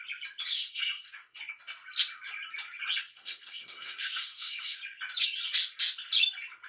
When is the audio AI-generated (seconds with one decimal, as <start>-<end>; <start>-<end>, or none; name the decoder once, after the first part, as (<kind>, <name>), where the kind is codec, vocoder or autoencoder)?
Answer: 0.5-1.4 (codec, SNAC); 3.0-4.8